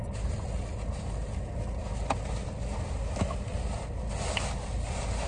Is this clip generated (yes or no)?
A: no